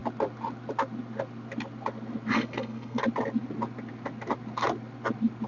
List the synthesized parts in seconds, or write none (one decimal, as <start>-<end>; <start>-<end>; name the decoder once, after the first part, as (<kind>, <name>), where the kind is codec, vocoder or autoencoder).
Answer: 2.3-3.0 (codec, SNAC)